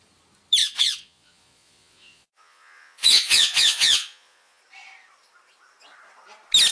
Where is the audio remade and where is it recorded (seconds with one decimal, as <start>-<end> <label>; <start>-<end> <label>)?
0.0-0.6 recorded; 0.6-4.6 remade; 4.6-6.7 recorded